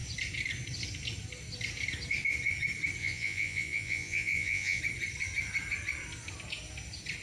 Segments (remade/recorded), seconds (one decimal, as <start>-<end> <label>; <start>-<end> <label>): 0.0-3.0 recorded; 3.0-4.8 remade; 4.8-7.2 recorded